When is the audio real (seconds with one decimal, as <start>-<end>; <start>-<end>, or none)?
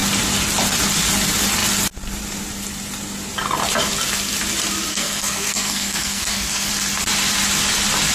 0.0-4.9; 6.7-8.1